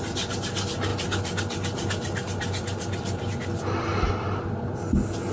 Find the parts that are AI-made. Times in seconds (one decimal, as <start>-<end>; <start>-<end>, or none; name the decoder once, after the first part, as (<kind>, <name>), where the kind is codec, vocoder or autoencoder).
none